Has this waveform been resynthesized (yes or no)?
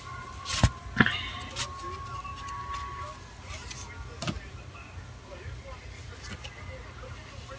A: no